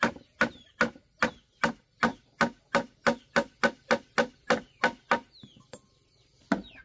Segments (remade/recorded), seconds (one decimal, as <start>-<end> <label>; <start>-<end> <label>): 0.0-6.8 recorded